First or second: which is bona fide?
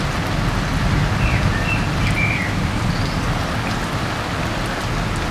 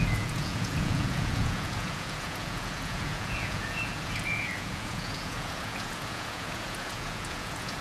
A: first